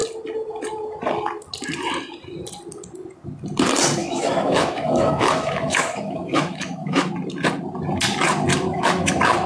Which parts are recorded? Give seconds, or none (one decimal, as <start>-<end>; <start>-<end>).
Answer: 0.0-4.0; 7.1-8.5; 9.1-9.5

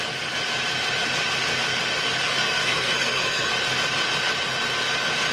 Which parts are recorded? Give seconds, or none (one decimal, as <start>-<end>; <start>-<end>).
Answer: 0.0-2.3; 3.5-5.3

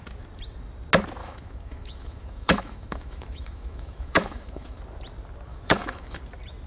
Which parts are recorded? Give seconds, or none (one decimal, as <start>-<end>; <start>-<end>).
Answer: 0.0-1.2; 4.8-5.5; 6.2-6.7

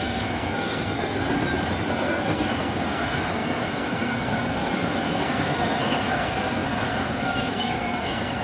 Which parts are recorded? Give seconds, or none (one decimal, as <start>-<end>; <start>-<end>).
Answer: 1.2-1.9

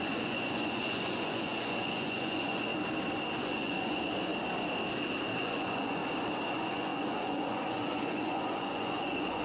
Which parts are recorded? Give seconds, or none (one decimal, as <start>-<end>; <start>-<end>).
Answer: 2.7-3.4; 4.3-5.4; 6.0-6.5